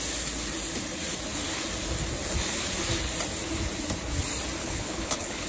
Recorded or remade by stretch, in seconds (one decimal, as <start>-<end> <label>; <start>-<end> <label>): 0.0-4.6 recorded; 4.6-5.5 remade